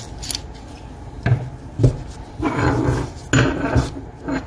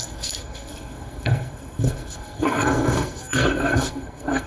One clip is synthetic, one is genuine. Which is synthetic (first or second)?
second